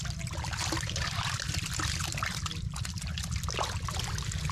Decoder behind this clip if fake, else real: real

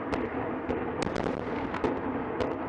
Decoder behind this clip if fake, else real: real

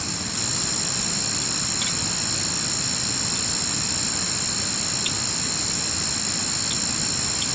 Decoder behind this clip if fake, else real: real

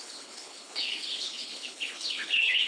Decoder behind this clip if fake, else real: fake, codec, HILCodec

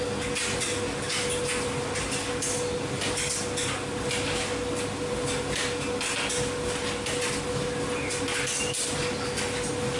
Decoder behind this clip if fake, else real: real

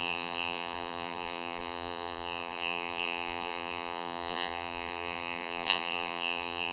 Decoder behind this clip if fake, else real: fake, vocoder, BigVGAN v2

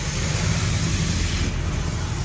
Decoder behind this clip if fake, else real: real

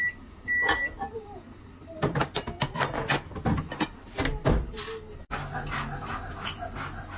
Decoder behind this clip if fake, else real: real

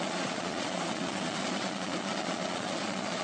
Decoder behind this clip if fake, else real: fake, vocoder, Vocos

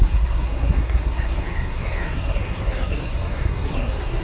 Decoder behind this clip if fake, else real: fake, codec, SNAC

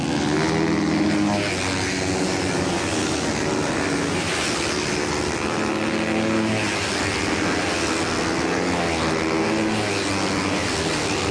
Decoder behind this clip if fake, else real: real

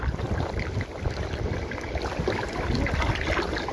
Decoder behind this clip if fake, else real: real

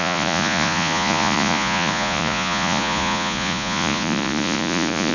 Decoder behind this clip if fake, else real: fake, vocoder, Vocos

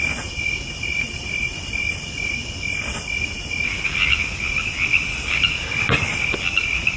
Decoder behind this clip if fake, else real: fake, vocoder, BigVGAN v2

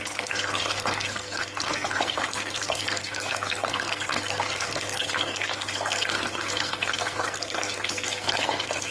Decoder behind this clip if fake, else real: fake, codec, SNAC